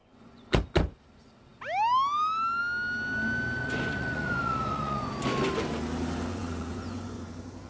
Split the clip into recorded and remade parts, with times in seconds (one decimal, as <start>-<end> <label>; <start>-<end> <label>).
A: 0.0-0.6 remade; 0.6-3.6 recorded; 3.6-5.1 remade; 5.1-6.3 recorded; 6.3-7.3 remade; 7.3-7.7 recorded